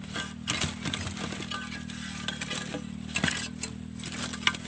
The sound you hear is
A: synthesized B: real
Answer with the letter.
B